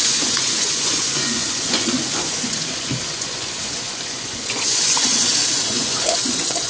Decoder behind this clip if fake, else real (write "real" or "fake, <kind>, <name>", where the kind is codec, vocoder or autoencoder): fake, vocoder, Vocos